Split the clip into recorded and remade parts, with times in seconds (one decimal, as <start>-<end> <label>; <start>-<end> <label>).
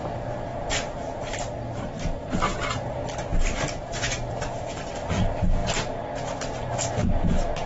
0.0-0.5 recorded; 0.5-5.1 remade; 5.1-7.7 recorded